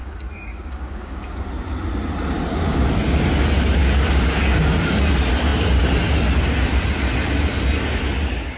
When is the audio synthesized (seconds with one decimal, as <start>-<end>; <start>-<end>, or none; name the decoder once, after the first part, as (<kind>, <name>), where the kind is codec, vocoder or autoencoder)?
0.0-1.4 (codec, DAC); 3.8-4.6